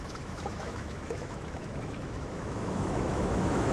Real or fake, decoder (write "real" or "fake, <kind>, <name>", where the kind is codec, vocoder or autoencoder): fake, autoencoder, DAC-VAE